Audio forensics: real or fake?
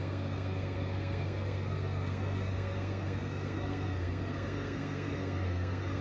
fake